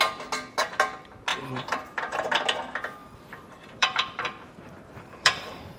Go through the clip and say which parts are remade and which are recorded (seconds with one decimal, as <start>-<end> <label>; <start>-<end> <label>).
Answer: 0.0-1.3 recorded; 1.3-2.4 remade; 2.4-3.0 recorded; 3.0-5.8 remade